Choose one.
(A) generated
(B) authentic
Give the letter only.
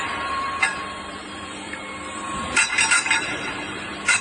A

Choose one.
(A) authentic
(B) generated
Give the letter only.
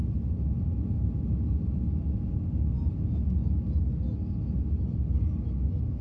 A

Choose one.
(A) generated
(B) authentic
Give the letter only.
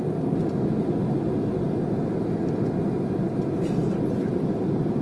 B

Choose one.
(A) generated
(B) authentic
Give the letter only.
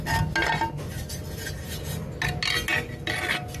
B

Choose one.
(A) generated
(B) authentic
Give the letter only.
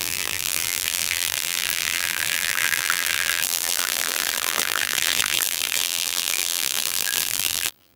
A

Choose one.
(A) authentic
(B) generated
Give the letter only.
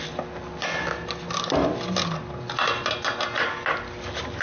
A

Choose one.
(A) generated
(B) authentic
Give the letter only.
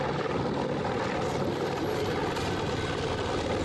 B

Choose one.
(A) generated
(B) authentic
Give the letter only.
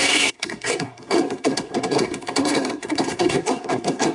A